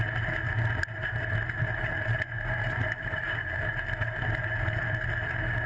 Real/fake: real